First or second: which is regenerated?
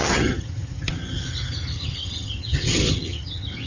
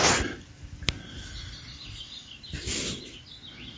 first